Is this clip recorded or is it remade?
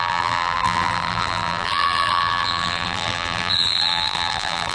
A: remade